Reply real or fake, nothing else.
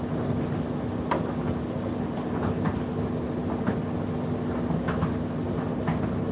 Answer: real